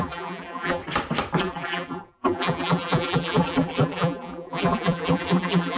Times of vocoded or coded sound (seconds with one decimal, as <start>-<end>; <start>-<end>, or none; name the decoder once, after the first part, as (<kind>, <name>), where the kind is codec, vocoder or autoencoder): 0.0-0.8 (vocoder, BigVGAN v2); 1.4-5.8